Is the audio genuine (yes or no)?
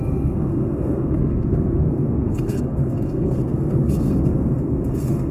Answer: no